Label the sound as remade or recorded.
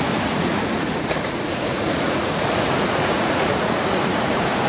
remade